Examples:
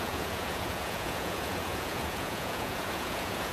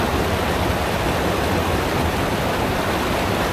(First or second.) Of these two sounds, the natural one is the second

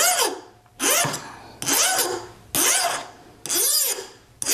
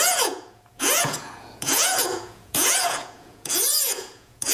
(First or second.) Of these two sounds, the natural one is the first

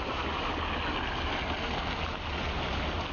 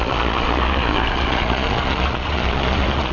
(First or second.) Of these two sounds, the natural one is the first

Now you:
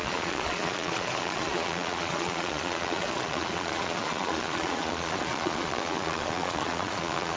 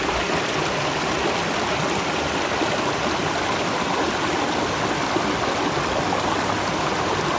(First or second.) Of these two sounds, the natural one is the second